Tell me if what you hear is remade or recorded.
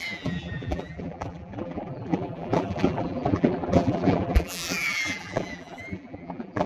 remade